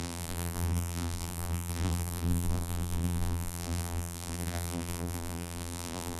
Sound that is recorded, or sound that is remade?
remade